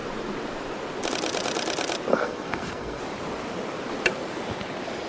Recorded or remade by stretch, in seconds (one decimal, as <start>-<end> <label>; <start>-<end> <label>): 0.0-2.1 recorded; 2.1-3.0 remade; 3.0-5.1 recorded